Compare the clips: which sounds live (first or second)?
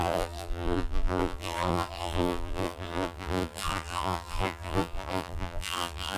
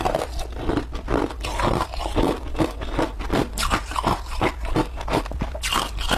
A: second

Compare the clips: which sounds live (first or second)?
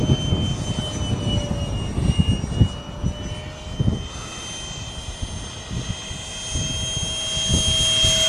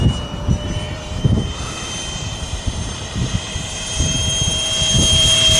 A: first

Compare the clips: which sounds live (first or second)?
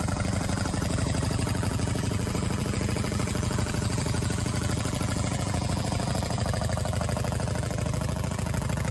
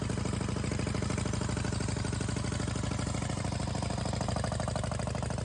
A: second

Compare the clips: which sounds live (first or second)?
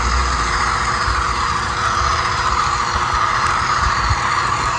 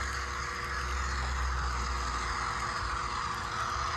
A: second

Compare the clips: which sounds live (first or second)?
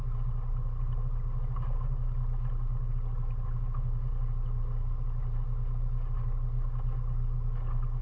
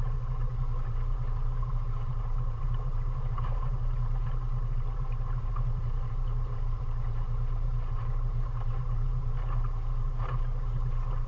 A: first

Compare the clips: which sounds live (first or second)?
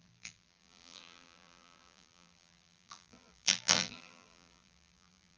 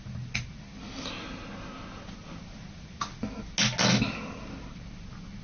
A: second